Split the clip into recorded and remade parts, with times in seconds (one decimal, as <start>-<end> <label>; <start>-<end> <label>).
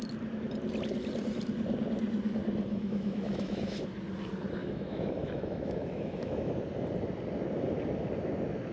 0.0-2.7 recorded; 2.7-3.9 remade; 3.9-4.6 recorded; 4.6-6.5 remade; 6.5-8.7 recorded